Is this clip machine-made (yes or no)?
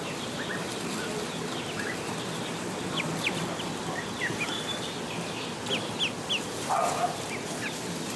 no